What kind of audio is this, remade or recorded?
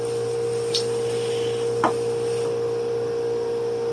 remade